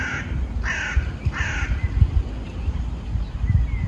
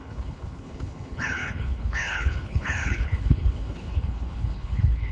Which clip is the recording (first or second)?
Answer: first